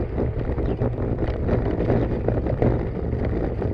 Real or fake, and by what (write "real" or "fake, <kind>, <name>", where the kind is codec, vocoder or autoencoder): real